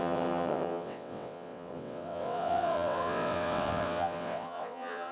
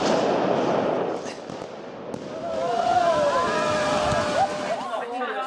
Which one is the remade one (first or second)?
first